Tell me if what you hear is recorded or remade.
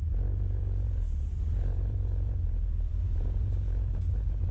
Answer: remade